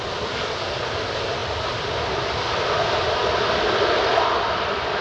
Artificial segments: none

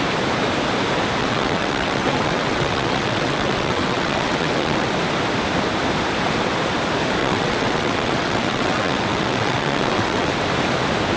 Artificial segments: 1.2-4.9 (vocoder, WaveNeXt); 7.2-10.3

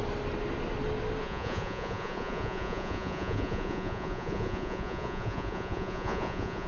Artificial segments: 1.2-6.7 (vocoder, Vocos)